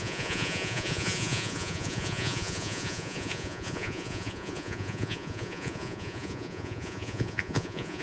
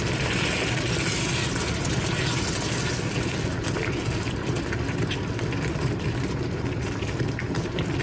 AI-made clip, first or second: first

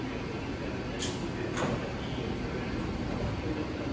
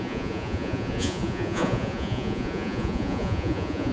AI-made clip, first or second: second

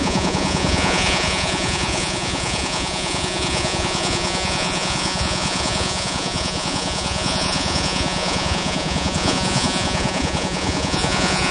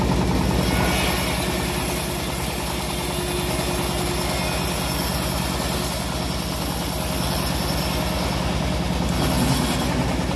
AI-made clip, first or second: first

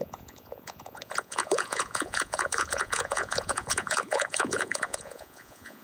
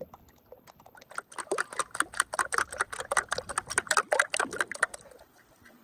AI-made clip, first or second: first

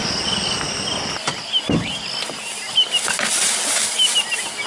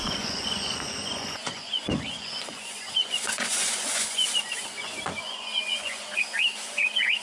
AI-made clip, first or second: second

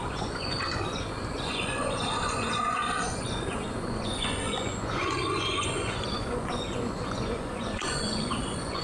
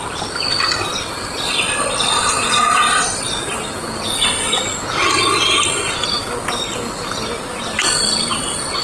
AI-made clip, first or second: first